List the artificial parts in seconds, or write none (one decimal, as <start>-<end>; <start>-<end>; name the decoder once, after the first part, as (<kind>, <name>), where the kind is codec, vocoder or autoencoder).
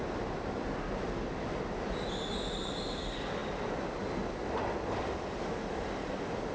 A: none